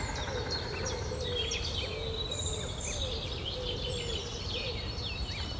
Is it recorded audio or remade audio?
recorded